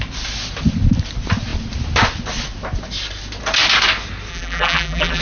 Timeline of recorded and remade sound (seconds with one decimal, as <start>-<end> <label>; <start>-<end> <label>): 0.0-4.3 recorded; 4.3-5.2 remade